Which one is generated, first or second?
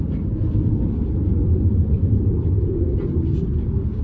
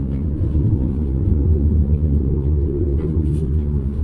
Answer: second